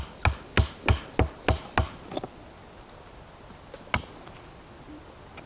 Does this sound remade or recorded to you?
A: recorded